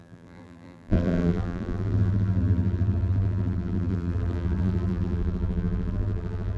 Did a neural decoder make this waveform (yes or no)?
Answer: yes